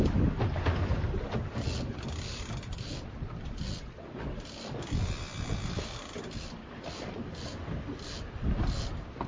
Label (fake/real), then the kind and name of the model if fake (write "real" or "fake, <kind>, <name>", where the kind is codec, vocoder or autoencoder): real